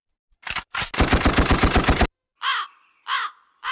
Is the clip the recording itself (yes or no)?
yes